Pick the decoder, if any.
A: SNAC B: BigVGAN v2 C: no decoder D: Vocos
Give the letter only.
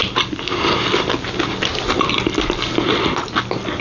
C